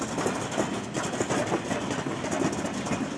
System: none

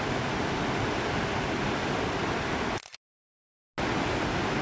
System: none